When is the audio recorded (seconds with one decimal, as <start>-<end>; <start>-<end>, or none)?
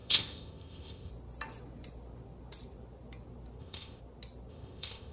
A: 1.1-3.6; 4.0-4.5